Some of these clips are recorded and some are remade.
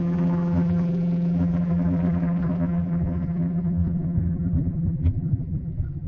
remade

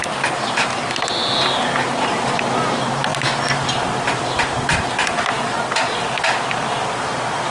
recorded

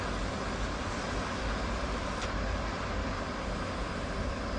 recorded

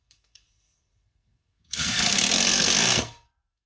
remade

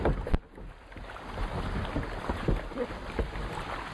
recorded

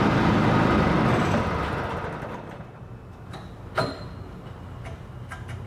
recorded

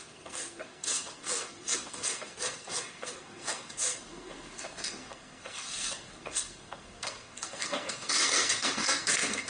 remade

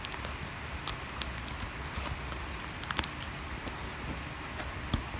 recorded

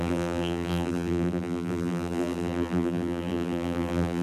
remade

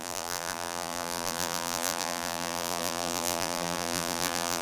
remade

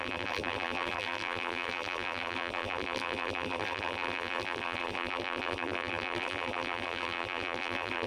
remade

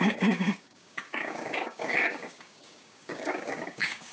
remade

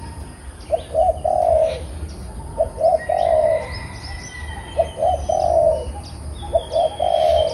recorded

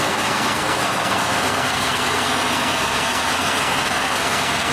remade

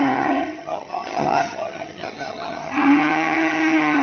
remade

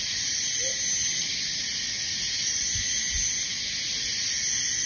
recorded